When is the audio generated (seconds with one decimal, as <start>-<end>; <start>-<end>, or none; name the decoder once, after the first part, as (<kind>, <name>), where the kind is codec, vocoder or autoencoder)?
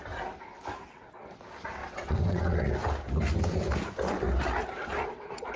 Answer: 1.8-2.7 (vocoder, WaveNeXt)